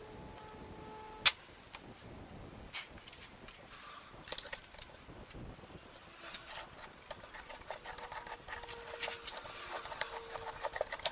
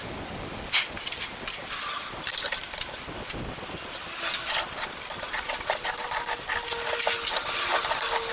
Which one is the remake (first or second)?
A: second